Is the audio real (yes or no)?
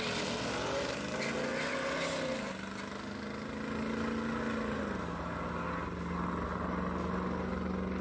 yes